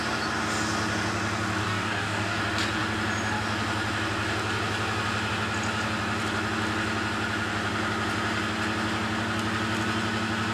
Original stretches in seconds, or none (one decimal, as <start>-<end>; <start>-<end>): 0.0-1.6; 2.4-10.5